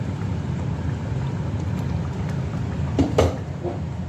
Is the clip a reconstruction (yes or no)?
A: no